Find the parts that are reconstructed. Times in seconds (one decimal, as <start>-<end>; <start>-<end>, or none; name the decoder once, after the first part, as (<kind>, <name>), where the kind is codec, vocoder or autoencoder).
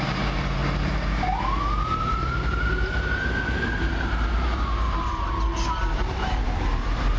0.0-0.6 (vocoder, BigVGAN v2); 2.0-7.2